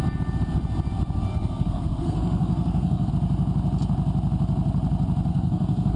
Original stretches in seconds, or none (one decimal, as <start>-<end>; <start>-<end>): 0.0-1.3; 3.1-5.3